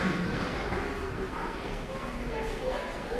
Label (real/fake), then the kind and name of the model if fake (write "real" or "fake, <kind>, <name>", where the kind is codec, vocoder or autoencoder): fake, codec, SNAC